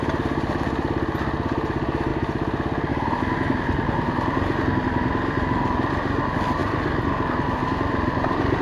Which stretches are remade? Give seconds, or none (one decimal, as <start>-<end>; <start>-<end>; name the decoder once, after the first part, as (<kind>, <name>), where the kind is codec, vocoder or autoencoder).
6.6-8.6 (vocoder, BigVGAN v2)